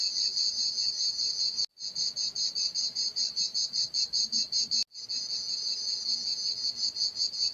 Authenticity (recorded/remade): recorded